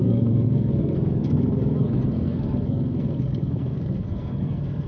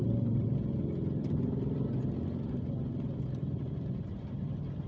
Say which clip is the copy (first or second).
first